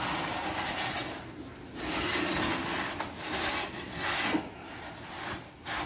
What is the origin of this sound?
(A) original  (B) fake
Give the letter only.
A